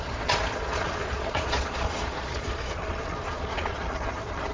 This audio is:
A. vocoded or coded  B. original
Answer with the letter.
A